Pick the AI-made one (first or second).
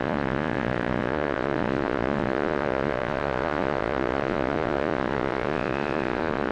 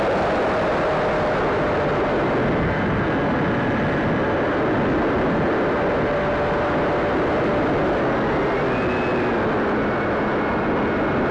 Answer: first